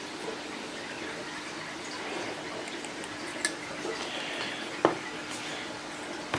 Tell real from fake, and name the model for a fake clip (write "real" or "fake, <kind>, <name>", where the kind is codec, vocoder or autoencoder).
real